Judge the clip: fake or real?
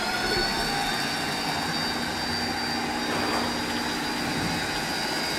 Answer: real